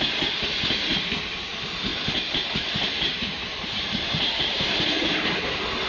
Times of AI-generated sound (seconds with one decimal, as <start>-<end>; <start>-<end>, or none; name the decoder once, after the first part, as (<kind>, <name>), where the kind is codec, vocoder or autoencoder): 1.9-5.4 (vocoder, BigVGAN v2)